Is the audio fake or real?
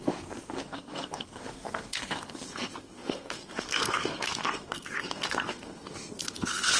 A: fake